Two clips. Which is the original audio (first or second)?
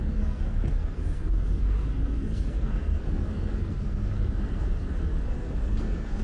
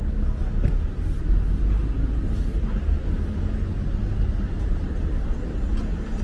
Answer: second